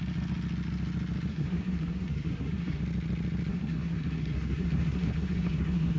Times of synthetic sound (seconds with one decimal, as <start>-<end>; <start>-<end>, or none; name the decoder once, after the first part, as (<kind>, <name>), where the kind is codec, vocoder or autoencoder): 1.3-2.8 (codec, SNAC); 3.5-6.0